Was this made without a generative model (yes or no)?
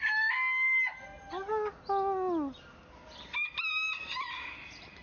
yes